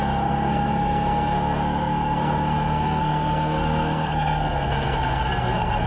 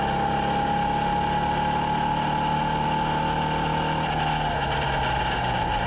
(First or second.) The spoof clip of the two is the first